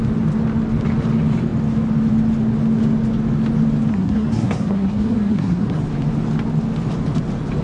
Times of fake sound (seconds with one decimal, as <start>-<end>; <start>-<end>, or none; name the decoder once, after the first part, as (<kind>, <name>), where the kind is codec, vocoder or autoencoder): 3.9-5.8 (codec, SNAC)